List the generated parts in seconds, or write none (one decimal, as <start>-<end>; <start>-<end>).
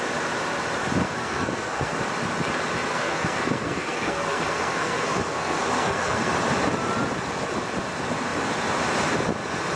1.0-2.0; 2.9-6.3